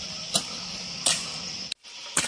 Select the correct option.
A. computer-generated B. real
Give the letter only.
B